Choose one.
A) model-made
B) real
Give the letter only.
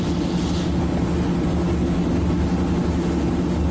B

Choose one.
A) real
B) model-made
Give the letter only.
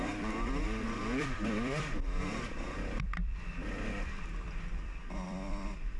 B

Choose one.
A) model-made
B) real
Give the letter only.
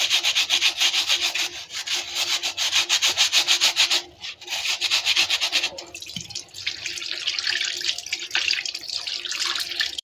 A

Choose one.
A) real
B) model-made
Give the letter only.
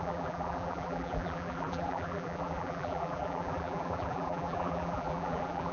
B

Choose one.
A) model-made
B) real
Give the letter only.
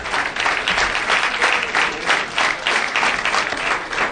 B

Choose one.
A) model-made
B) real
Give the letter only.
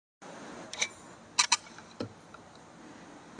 B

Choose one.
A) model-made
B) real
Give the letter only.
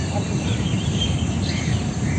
A